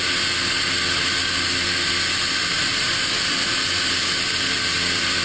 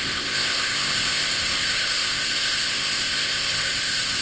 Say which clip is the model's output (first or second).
second